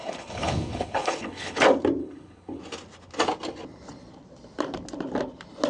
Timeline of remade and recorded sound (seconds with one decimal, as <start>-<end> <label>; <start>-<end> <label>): 0.0-1.6 remade; 1.6-2.0 recorded; 2.0-2.6 remade; 2.6-5.7 recorded